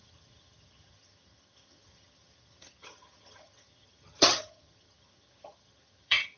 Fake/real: fake